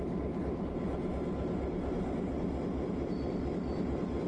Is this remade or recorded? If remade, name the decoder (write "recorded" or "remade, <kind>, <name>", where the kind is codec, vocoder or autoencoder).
recorded